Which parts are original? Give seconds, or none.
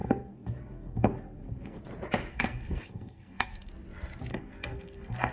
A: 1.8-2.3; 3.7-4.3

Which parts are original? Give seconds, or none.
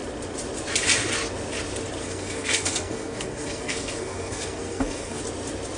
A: 0.0-2.0; 5.2-5.8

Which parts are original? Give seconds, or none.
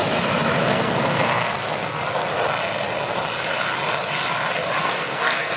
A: 0.0-0.6; 2.3-4.8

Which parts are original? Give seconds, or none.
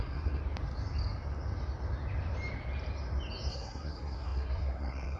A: 0.4-3.5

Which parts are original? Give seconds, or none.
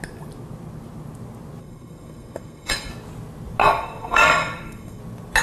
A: 0.0-1.6; 2.9-3.6; 5.0-5.4